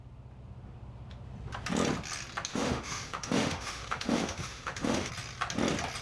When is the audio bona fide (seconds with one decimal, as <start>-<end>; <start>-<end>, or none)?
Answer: 0.0-2.5; 5.1-6.0